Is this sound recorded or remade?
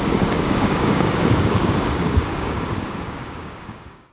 remade